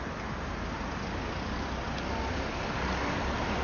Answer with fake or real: real